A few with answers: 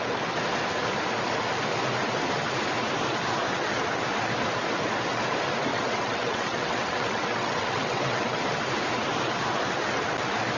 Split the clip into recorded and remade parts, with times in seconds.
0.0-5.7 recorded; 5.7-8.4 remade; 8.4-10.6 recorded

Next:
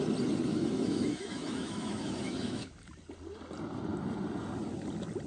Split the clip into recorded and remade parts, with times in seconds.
0.0-0.5 recorded; 0.5-2.7 remade; 2.7-5.3 recorded

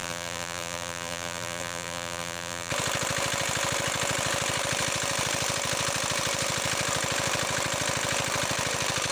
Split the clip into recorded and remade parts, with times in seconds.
0.0-2.7 remade; 2.7-9.1 recorded

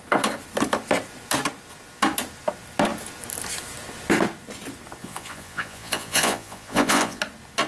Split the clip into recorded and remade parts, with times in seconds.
0.0-5.0 recorded; 5.0-7.2 remade; 7.2-7.7 recorded

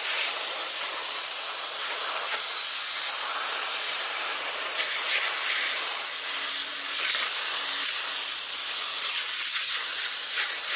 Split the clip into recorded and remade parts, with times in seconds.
0.0-1.0 remade; 1.0-3.9 recorded; 3.9-6.7 remade; 6.7-10.0 recorded; 10.0-10.8 remade

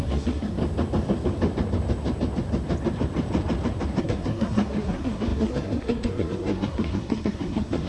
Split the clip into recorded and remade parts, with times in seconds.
0.0-0.6 remade; 0.6-4.0 recorded; 4.0-7.9 remade

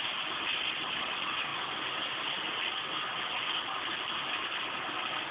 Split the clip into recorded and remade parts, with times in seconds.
0.0-5.3 recorded